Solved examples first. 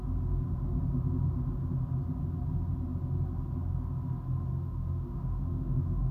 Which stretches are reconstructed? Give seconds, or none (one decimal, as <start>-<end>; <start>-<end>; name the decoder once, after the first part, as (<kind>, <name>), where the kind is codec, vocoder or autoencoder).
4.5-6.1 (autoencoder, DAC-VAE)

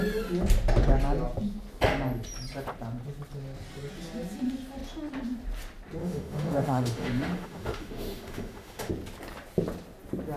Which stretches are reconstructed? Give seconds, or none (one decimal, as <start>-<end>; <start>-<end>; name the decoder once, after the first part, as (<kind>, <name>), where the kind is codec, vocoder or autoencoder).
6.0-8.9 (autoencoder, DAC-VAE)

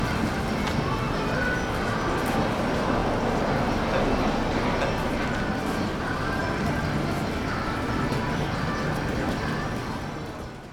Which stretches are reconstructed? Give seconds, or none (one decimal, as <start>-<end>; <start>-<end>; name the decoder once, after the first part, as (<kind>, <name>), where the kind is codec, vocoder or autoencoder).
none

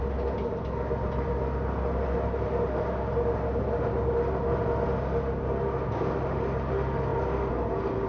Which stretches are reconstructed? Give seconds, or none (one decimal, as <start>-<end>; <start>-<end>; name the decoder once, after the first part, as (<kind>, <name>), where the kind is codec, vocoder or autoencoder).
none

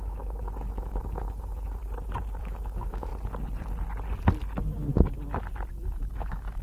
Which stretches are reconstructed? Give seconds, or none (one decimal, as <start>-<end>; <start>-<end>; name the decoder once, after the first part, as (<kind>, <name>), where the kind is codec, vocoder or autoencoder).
0.0-1.8 (autoencoder, DAC-VAE); 2.4-3.1; 5.7-6.6